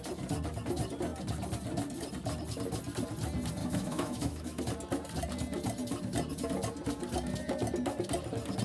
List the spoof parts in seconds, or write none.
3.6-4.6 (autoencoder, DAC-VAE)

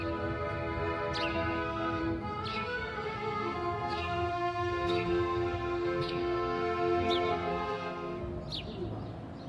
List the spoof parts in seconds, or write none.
1.3-2.0 (codec, SNAC); 2.5-7.1; 7.5-8.2